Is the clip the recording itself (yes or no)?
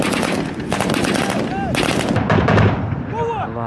yes